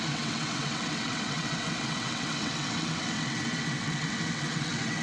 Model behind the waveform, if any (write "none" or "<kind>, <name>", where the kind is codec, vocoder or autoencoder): vocoder, WaveNeXt